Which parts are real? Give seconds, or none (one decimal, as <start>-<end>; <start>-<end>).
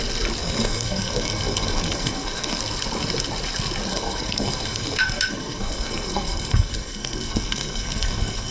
0.0-0.4; 2.6-3.9